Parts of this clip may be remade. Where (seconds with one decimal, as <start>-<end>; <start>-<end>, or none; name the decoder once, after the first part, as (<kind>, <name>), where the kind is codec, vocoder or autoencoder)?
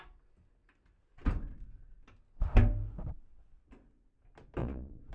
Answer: 4.6-5.1 (vocoder, Vocos)